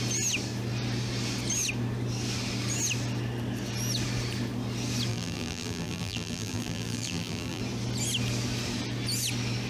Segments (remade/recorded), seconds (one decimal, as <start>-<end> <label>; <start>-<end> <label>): 0.0-5.1 recorded; 5.1-7.6 remade; 7.6-9.7 recorded